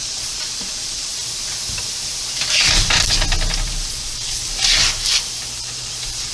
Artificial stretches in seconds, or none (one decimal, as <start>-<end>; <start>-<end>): 0.0-1.1; 3.9-4.4; 5.6-6.3